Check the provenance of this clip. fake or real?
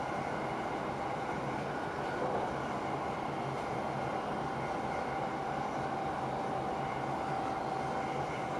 real